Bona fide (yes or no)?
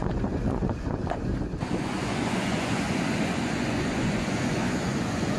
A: no